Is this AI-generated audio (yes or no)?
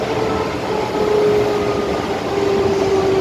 no